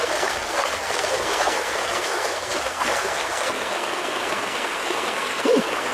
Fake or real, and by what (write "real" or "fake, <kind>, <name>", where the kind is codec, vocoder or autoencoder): fake, codec, SNAC